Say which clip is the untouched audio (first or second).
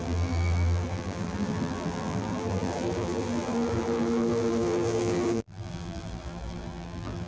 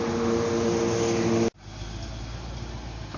second